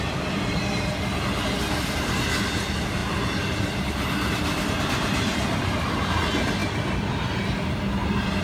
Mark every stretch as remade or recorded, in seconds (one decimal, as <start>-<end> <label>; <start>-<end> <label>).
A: 0.0-8.4 recorded

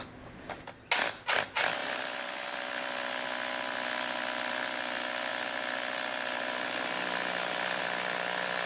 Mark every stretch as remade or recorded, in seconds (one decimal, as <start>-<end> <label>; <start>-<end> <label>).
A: 0.0-8.7 recorded

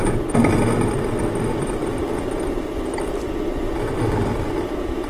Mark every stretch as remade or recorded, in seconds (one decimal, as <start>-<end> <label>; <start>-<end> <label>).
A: 0.0-1.8 recorded; 1.8-4.5 remade; 4.5-5.1 recorded

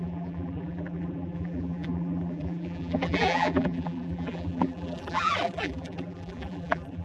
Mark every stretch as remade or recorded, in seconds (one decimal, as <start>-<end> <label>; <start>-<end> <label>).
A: 0.0-7.0 remade

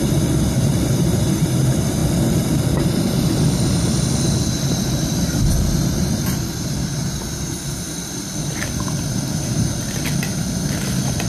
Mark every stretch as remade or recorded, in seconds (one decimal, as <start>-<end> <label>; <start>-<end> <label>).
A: 0.0-2.0 remade; 2.0-4.4 recorded; 4.4-11.3 remade

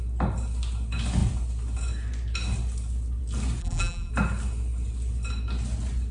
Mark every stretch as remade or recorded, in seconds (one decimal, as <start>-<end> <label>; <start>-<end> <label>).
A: 0.0-3.6 recorded; 3.6-4.1 remade; 4.1-6.1 recorded

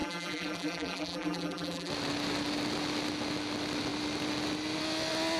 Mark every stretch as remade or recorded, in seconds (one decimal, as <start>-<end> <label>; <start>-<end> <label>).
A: 0.0-1.9 remade; 1.9-5.4 recorded

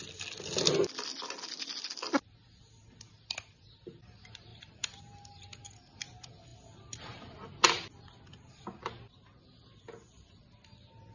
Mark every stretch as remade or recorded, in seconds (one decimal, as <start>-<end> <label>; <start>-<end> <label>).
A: 0.0-4.5 recorded; 4.5-5.0 remade; 5.0-11.1 recorded